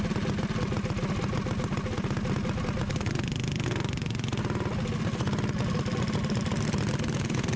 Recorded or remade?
recorded